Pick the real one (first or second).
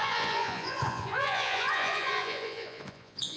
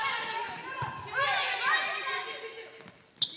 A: second